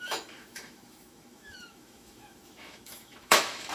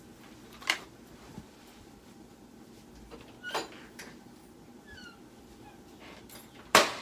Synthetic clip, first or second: first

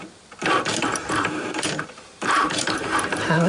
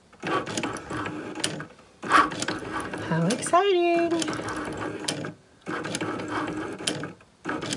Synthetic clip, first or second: first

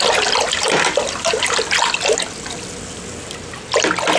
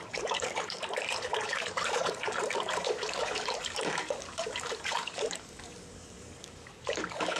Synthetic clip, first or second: second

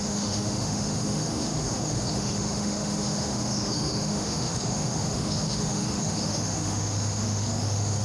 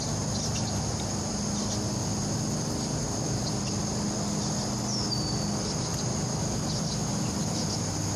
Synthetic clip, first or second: first